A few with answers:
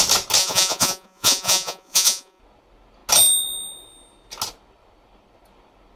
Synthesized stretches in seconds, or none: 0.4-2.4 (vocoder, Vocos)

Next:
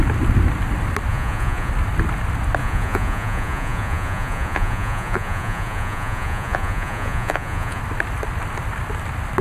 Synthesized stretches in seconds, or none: 1.1-1.7 (vocoder, Vocos); 2.6-7.8

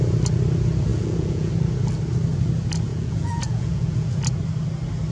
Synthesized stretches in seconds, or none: 0.9-1.5 (vocoder, Vocos); 2.9-4.2

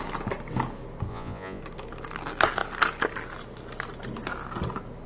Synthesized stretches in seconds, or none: 1.1-1.6 (vocoder, Vocos)

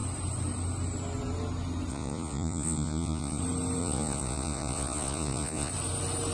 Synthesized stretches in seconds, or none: 1.9-3.4 (vocoder, Vocos); 3.8-5.7

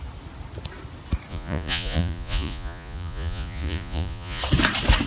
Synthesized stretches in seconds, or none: 1.3-4.4 (vocoder, Vocos)